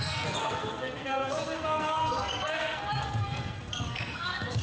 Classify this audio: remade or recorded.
remade